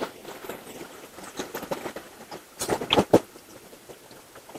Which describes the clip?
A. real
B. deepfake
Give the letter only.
B